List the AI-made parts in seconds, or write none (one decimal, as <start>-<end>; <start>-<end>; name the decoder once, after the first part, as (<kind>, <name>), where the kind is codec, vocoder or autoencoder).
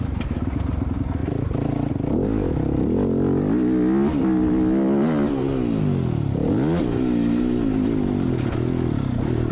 1.2-1.9 (vocoder, BigVGAN v2)